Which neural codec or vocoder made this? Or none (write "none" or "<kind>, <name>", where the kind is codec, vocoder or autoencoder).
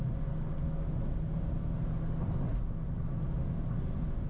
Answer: none